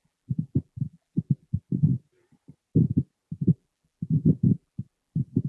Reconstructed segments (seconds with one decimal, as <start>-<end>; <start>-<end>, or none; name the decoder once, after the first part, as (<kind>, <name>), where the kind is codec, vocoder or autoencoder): 0.0-1.9 (vocoder, BigVGAN v2); 3.4-5.5